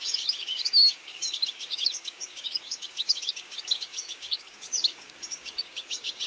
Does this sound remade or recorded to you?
remade